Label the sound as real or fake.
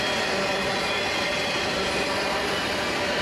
real